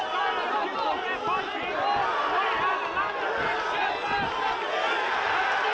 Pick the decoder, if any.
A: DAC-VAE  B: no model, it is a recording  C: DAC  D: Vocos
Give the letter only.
B